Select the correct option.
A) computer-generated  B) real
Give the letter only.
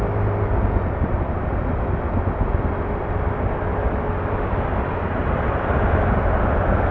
B